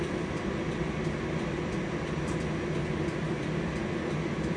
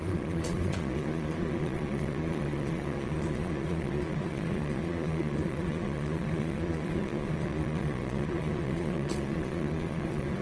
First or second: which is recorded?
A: first